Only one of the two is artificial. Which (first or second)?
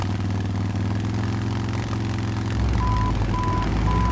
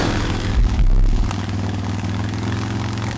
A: second